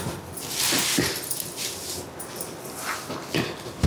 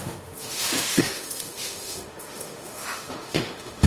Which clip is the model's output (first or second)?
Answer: second